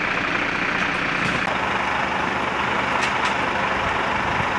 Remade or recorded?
recorded